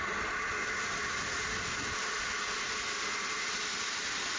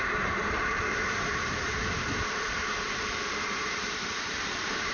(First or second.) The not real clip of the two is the second